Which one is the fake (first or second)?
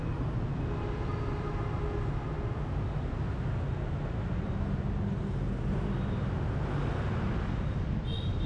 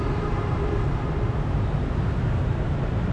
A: second